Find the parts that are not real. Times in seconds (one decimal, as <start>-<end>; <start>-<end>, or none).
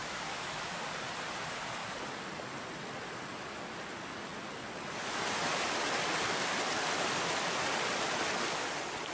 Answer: 0.0-0.7